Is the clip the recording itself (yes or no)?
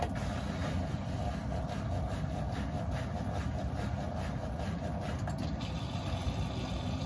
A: yes